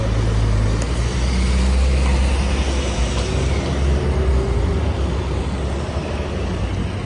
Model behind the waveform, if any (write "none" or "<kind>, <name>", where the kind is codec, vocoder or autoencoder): none